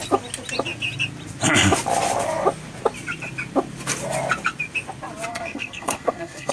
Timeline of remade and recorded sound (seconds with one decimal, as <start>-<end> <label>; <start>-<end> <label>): 0.0-5.3 recorded; 5.3-6.5 remade